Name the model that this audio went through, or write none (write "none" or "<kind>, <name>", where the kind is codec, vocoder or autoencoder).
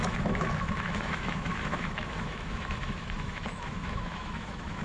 autoencoder, DAC-VAE